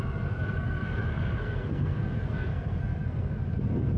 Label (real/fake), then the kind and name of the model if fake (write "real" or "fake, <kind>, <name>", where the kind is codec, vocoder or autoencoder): fake, codec, SNAC